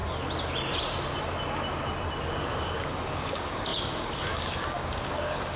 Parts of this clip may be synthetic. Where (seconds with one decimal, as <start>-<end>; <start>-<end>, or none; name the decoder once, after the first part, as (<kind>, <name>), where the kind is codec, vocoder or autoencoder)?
2.2-5.6 (codec, DAC)